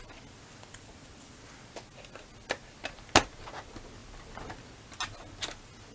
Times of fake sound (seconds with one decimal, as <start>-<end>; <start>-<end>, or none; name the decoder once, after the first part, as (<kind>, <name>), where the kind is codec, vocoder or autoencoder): none